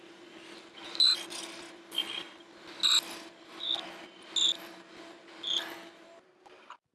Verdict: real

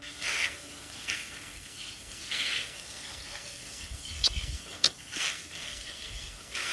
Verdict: fake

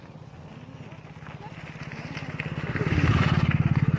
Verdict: real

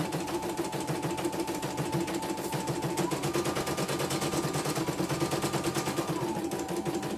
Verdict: real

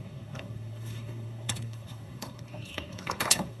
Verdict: fake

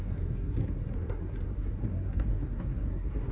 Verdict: fake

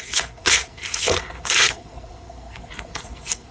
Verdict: fake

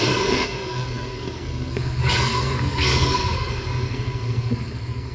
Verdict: fake